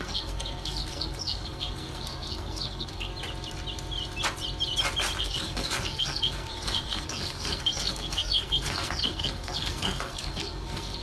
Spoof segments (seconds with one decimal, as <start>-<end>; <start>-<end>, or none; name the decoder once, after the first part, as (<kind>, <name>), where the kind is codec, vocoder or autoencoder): 0.0-3.1 (codec, SNAC); 5.2-11.0